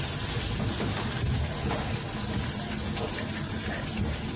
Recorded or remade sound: recorded